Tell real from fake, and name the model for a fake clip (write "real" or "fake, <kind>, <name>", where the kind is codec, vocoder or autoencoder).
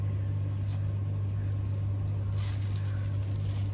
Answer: real